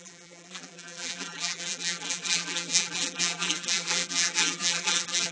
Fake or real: fake